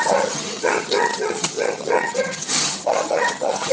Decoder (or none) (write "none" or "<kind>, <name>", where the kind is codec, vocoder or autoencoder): vocoder, HiFi-GAN